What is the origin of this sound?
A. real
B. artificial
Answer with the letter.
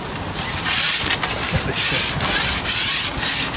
A